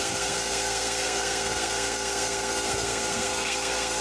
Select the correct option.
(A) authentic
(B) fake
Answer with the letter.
B